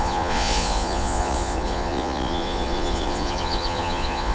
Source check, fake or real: fake